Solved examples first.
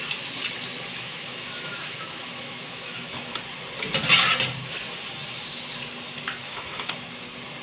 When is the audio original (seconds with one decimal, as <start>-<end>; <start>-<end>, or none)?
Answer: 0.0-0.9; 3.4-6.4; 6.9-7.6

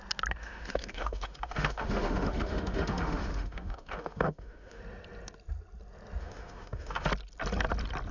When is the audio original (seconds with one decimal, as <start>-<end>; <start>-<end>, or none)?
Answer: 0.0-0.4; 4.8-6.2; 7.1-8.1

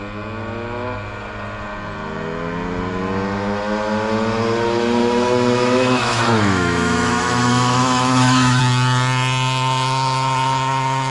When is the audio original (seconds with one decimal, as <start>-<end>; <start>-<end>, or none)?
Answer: 0.0-5.0; 8.6-11.1